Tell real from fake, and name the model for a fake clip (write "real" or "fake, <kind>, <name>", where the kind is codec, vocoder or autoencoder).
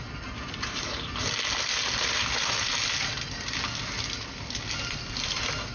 real